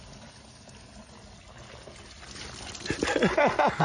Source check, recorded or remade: recorded